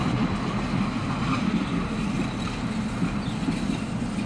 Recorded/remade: recorded